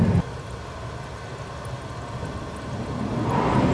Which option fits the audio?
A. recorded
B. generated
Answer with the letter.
A